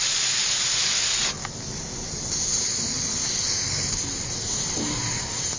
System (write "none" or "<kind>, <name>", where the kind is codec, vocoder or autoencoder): none